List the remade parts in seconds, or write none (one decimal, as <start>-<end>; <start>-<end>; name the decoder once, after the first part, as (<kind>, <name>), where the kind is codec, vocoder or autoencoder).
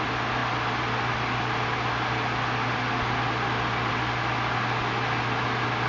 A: none